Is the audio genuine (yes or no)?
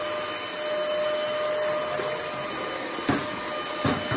yes